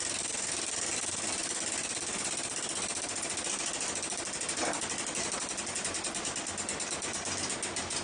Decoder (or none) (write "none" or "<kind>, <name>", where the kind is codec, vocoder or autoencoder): none